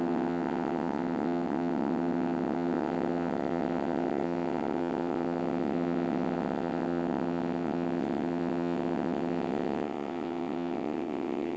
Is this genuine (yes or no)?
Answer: no